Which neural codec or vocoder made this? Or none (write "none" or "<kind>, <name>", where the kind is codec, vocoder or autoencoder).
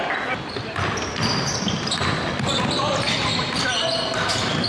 none